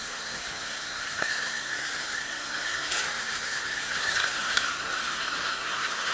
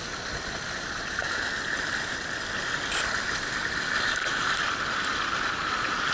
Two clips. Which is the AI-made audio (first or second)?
first